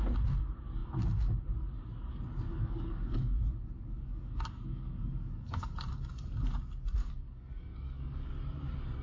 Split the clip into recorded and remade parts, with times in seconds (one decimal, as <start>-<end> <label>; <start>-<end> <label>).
0.0-2.5 recorded; 2.5-6.1 remade; 6.1-7.0 recorded; 7.0-8.3 remade; 8.3-9.0 recorded